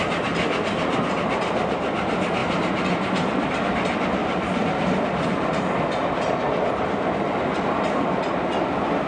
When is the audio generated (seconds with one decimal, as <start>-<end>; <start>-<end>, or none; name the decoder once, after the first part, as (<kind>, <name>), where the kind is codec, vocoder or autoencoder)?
2.4-3.5 (vocoder, BigVGAN v2); 4.2-5.6